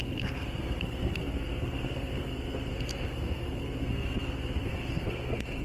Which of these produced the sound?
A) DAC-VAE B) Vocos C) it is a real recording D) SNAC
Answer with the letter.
D